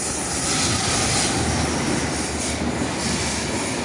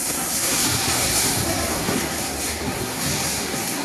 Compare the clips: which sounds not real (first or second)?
second